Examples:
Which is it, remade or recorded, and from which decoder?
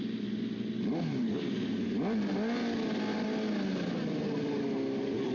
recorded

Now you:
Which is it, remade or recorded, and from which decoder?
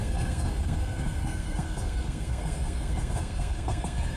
remade, codec, SNAC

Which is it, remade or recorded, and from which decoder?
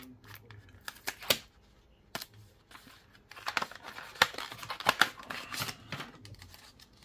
recorded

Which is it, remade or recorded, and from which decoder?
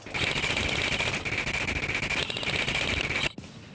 recorded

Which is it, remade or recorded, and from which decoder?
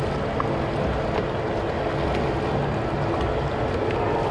recorded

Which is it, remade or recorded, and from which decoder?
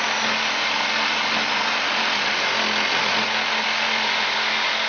recorded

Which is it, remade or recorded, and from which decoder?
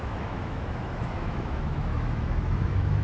remade, autoencoder, DAC-VAE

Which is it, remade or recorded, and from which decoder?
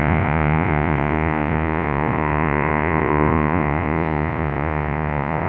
remade, vocoder, Vocos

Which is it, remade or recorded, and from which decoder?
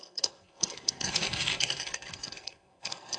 remade, codec, SNAC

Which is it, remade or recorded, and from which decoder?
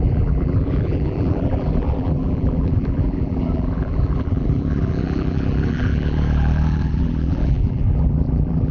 remade, vocoder, BigVGAN v2